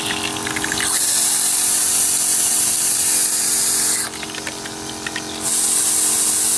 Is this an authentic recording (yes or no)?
no